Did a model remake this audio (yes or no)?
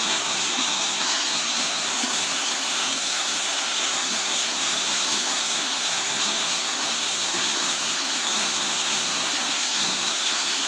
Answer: yes